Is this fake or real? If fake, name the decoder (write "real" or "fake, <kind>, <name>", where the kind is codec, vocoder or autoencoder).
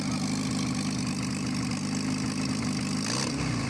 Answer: real